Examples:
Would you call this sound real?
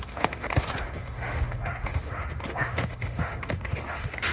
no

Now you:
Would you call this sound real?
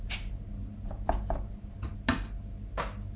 yes